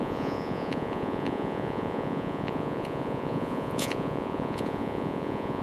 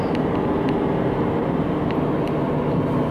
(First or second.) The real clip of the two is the second